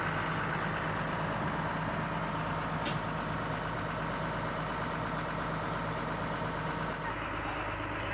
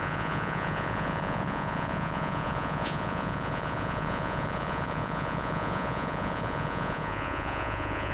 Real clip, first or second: first